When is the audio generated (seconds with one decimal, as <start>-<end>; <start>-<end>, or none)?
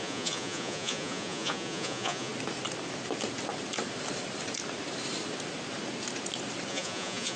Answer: 0.0-2.3; 6.7-7.4